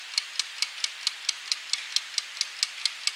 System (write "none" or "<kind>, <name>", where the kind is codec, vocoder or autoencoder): none